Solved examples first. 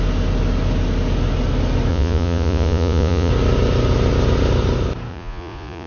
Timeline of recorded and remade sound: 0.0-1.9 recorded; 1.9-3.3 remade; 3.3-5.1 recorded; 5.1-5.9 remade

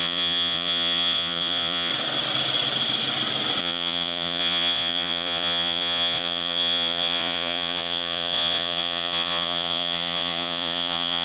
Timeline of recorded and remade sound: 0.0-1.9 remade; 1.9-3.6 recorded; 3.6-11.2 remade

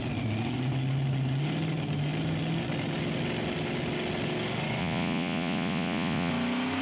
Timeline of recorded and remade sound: 0.0-4.8 recorded; 4.8-6.3 remade; 6.3-6.8 recorded

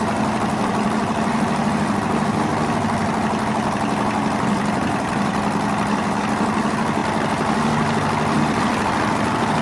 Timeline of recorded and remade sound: 0.0-9.6 recorded

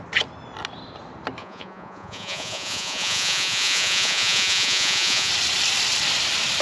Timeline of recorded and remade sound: 0.0-1.4 recorded; 1.4-5.3 remade; 5.3-6.6 recorded

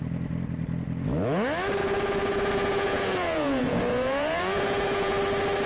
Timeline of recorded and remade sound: 0.0-1.8 recorded; 1.8-5.2 remade; 5.2-5.7 recorded

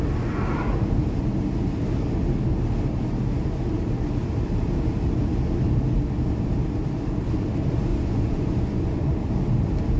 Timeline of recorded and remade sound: 0.0-7.9 recorded; 7.9-9.1 remade; 9.1-10.0 recorded